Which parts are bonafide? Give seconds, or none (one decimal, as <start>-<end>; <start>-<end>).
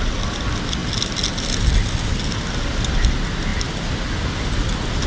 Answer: 0.0-5.1